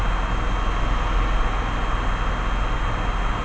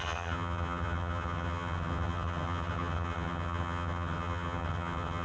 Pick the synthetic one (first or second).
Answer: second